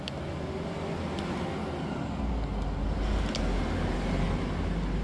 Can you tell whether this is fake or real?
real